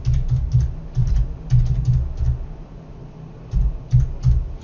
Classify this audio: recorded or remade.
recorded